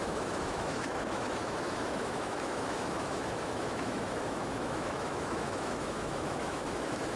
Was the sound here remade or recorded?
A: remade